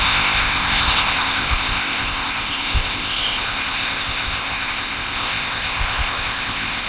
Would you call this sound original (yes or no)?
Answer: no